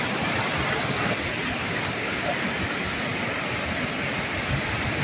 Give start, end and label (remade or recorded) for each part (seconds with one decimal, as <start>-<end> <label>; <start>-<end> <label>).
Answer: 0.0-1.6 recorded; 1.6-2.2 remade; 2.2-5.0 recorded